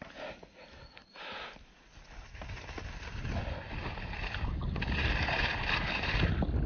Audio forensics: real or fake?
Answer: real